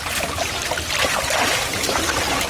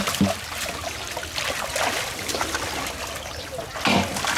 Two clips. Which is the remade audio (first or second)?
first